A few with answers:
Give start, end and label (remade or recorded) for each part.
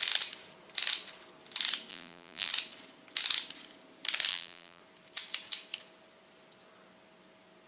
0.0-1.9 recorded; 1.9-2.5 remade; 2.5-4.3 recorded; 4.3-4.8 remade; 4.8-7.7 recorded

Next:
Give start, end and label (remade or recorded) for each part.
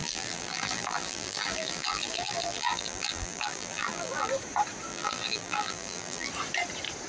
0.0-4.3 remade; 4.3-4.9 recorded; 4.9-6.3 remade; 6.3-7.1 recorded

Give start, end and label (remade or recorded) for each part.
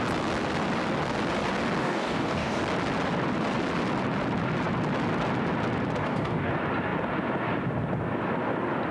0.0-1.8 recorded; 1.8-2.6 remade; 2.6-6.0 recorded; 6.0-6.5 remade; 6.5-8.9 recorded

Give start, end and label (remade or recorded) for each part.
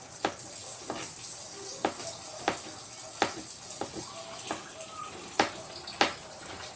0.0-6.8 recorded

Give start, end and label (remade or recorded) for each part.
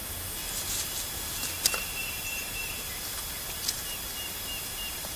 0.0-5.2 recorded